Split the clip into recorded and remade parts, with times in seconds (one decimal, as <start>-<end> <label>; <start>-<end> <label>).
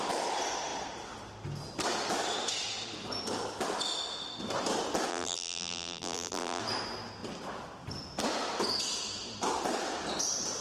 0.0-5.1 recorded; 5.1-6.6 remade; 6.6-10.6 recorded